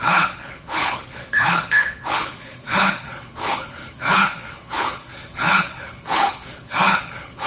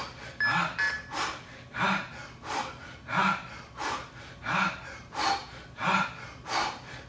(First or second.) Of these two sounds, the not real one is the first